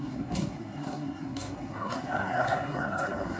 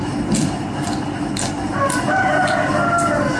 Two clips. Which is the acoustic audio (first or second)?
second